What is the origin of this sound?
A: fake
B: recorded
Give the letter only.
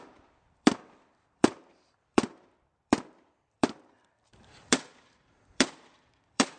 A